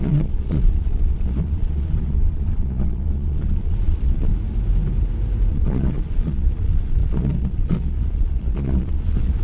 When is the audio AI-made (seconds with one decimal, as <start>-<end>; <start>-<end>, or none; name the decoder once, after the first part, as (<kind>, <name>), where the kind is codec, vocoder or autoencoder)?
0.0-4.3 (vocoder, Vocos); 5.5-9.4